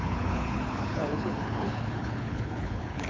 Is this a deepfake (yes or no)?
yes